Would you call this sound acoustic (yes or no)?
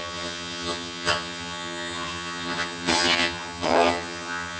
no